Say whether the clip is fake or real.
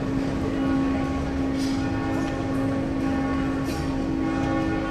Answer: real